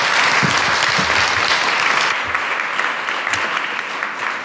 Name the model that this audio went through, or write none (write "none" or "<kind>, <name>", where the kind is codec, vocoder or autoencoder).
none